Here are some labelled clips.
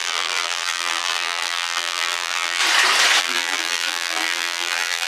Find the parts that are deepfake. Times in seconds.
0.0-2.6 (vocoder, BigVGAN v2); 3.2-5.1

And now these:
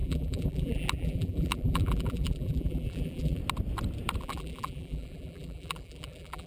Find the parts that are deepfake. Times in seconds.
0.0-3.4 (vocoder, BigVGAN v2); 4.2-6.5

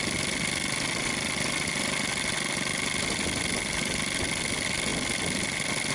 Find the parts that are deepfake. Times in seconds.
none

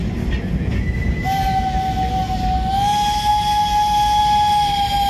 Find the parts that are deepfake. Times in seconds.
none

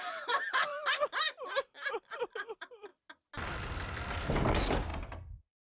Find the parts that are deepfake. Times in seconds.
0.0-0.7 (vocoder, BigVGAN v2); 1.5-2.9; 4.1-4.9

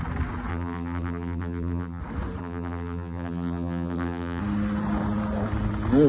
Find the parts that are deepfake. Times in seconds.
0.5-2.0 (vocoder, BigVGAN v2); 2.4-4.4

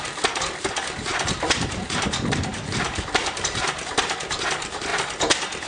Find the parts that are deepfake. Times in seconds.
1.1-4.5 (vocoder, BigVGAN v2)

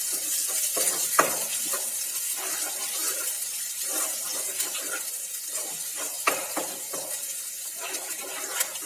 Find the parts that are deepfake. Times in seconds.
3.0-3.7 (vocoder, BigVGAN v2); 4.3-5.0